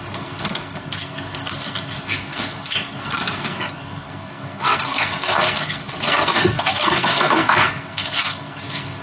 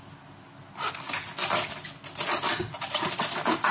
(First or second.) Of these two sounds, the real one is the second